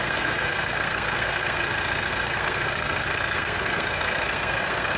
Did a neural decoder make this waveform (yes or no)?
yes